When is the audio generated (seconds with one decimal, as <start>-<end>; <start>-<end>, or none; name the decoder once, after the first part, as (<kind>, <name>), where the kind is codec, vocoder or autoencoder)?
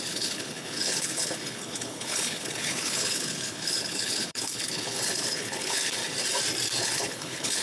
0.0-6.0 (codec, HILCodec); 6.8-7.6